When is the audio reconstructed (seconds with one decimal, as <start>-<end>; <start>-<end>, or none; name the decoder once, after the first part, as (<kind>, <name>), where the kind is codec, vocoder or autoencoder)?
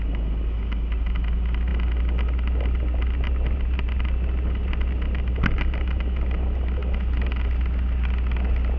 none